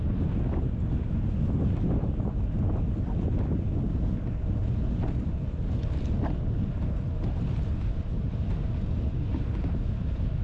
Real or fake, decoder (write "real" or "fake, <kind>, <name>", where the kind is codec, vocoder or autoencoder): real